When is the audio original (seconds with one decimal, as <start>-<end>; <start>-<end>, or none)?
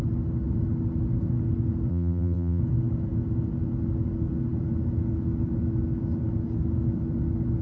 0.0-1.9; 2.6-7.6